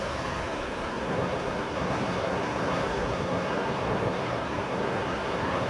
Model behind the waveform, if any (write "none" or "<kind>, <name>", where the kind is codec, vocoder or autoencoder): codec, SNAC